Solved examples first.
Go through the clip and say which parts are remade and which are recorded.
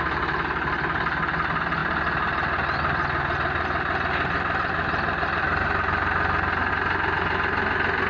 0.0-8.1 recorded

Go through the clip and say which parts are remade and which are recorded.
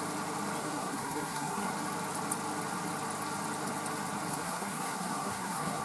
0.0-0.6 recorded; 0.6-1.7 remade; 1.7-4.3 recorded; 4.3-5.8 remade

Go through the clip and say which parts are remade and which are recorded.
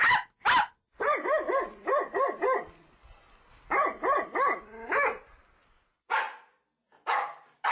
0.0-7.7 recorded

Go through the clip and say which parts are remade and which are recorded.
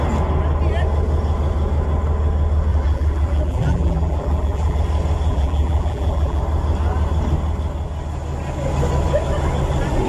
0.0-2.7 recorded; 2.7-4.8 remade; 4.8-5.3 recorded; 5.3-6.4 remade; 6.4-10.1 recorded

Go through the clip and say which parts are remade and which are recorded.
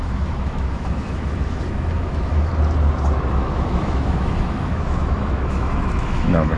0.0-2.5 remade; 2.5-3.3 recorded; 3.3-6.6 remade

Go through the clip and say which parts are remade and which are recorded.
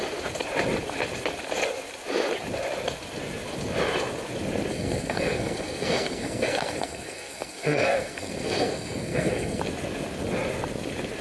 0.0-4.7 recorded; 4.7-9.6 remade; 9.6-11.2 recorded